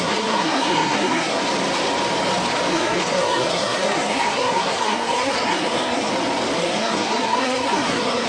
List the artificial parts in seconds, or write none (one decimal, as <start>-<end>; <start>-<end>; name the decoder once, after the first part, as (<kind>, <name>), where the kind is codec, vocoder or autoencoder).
0.0-1.4 (codec, SNAC); 2.7-6.1; 6.6-8.3